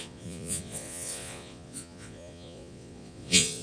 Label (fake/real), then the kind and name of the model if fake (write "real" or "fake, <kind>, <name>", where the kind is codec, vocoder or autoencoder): fake, vocoder, Vocos